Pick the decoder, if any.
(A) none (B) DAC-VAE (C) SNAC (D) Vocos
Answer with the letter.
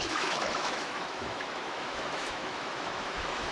B